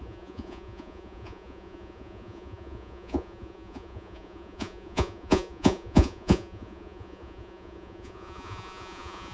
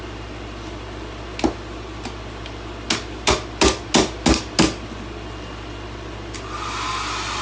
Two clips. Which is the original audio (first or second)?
second